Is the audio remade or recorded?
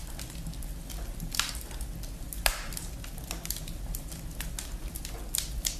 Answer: recorded